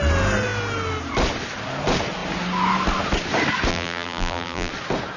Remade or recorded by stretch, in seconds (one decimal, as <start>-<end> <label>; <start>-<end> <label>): 0.0-3.7 recorded; 3.7-4.7 remade; 4.7-5.2 recorded